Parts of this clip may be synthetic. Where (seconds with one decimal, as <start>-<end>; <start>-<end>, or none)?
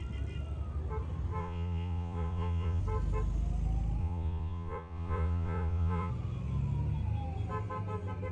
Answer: 1.4-2.8; 4.0-6.1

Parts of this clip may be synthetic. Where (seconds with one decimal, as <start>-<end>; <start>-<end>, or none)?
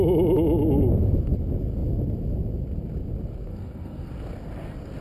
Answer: 3.5-4.1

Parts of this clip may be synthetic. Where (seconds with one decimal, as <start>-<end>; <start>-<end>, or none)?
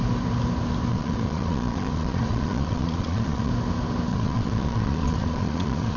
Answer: 0.9-3.5; 4.1-6.0